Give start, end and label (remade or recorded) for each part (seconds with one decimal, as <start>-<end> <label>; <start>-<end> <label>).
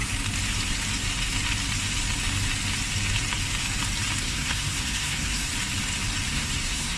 0.0-4.2 recorded; 4.2-5.5 remade; 5.5-6.3 recorded; 6.3-7.0 remade